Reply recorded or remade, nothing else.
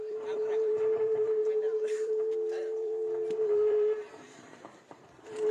remade